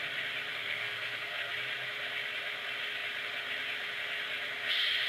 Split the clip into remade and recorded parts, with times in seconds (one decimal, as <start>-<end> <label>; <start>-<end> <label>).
0.0-0.5 recorded; 0.5-1.5 remade; 1.5-5.1 recorded

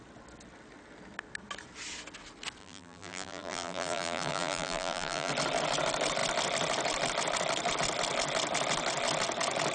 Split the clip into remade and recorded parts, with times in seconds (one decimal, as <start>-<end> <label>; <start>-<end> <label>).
0.0-2.6 recorded; 2.6-5.3 remade; 5.3-9.7 recorded

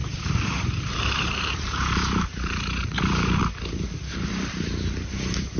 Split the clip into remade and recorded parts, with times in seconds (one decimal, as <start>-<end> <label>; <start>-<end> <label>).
0.0-3.4 remade; 3.4-5.6 recorded

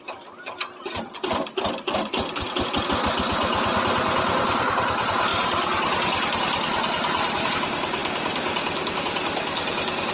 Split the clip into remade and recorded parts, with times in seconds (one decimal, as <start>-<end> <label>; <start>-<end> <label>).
0.0-10.1 recorded

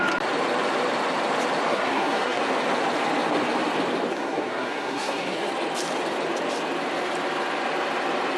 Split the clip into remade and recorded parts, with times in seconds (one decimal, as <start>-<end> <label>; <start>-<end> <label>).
0.0-1.7 recorded; 1.7-2.4 remade; 2.4-4.1 recorded; 4.1-5.5 remade; 5.5-8.4 recorded